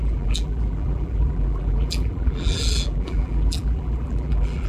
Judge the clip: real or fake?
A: fake